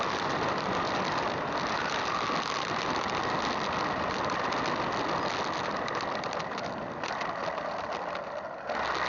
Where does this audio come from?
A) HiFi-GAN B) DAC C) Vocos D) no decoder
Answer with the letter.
D